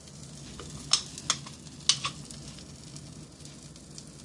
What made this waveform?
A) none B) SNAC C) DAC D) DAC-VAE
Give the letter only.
A